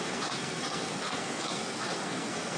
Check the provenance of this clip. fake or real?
fake